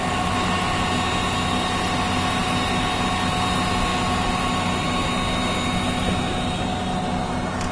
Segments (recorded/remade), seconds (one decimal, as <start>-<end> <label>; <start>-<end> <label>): 0.0-7.7 recorded